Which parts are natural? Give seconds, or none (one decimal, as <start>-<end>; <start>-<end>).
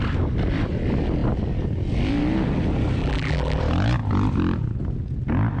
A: 0.0-3.0; 3.6-5.6